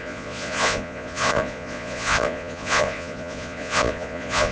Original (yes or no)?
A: no